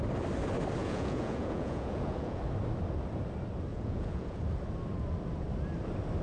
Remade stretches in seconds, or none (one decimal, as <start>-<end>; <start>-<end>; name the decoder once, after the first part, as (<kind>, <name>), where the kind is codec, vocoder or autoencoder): 0.8-2.4 (vocoder, Vocos); 3.7-4.4